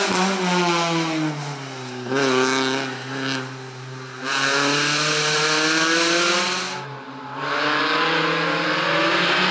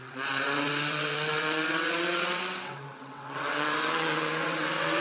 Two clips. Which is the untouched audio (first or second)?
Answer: first